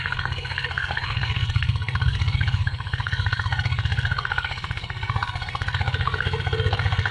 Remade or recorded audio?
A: remade